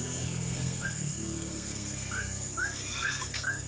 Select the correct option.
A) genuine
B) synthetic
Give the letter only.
B